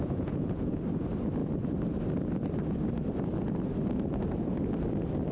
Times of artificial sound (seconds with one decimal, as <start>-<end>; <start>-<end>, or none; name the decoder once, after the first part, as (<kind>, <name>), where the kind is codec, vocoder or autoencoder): 0.0-0.8 (vocoder, Vocos)